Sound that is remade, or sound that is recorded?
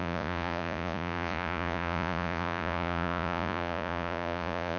remade